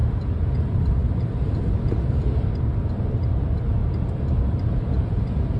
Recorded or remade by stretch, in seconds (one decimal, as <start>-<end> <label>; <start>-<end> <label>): 0.0-5.6 recorded